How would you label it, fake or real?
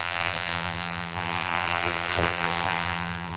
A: fake